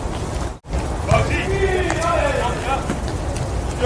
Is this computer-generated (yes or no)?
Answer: no